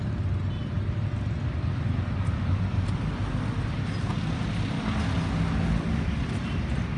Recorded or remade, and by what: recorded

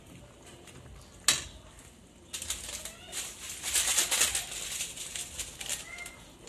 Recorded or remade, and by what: recorded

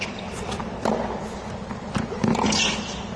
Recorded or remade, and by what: recorded